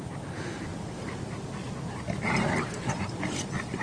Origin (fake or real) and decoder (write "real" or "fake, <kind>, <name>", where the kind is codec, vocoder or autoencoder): real